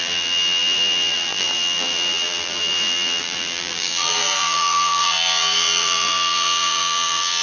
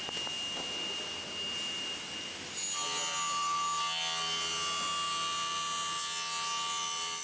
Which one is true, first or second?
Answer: second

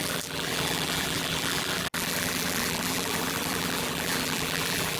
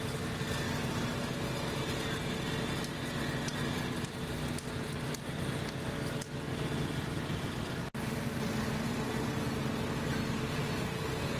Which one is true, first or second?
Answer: second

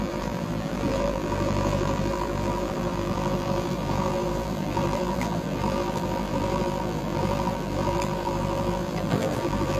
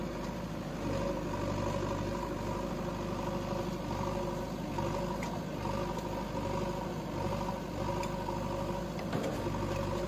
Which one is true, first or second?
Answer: second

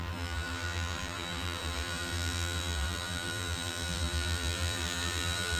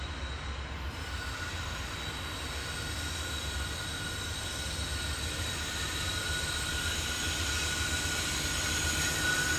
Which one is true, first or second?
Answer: second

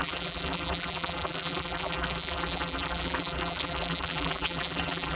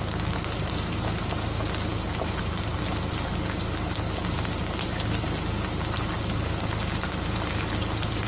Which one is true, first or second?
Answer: second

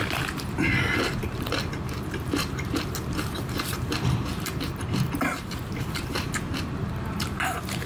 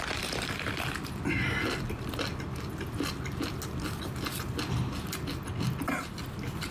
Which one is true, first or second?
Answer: second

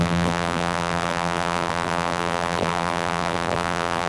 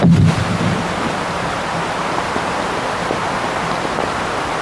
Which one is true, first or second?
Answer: second